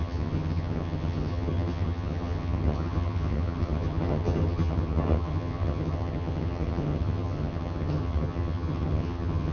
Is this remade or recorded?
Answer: remade